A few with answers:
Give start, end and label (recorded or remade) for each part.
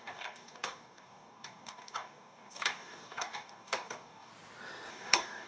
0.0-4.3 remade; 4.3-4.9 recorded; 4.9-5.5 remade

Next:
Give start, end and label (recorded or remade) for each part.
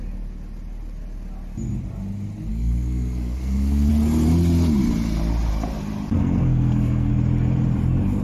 0.0-2.5 recorded; 2.5-3.9 remade; 3.9-6.2 recorded; 6.2-7.1 remade; 7.1-8.2 recorded